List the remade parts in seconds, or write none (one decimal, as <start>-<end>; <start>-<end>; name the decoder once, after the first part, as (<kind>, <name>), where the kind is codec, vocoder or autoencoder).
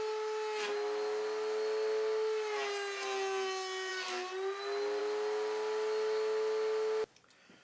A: none